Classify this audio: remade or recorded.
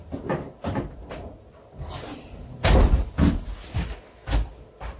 recorded